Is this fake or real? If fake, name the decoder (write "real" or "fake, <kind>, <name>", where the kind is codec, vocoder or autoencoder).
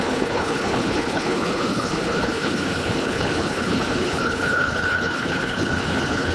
fake, codec, HILCodec